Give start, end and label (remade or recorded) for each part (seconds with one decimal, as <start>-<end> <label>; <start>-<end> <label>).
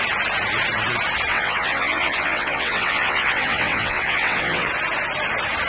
0.0-1.3 recorded; 1.3-4.7 remade; 4.7-5.7 recorded